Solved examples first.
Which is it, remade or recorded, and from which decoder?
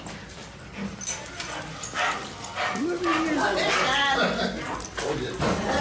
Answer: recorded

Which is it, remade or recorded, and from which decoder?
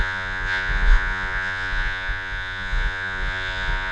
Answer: remade, vocoder, Vocos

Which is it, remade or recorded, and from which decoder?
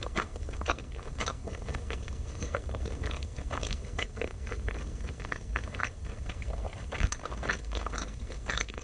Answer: remade, codec, SNAC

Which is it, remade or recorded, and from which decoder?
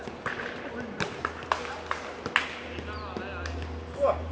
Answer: recorded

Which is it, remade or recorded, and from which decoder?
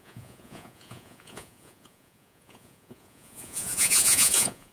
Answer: remade, vocoder, Vocos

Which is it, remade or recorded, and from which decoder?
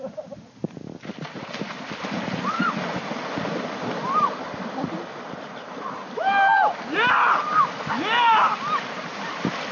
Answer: recorded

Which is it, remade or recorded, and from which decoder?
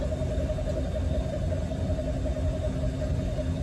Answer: recorded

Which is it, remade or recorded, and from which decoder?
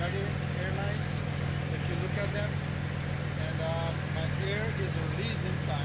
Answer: recorded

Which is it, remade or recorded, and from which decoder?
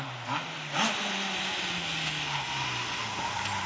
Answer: recorded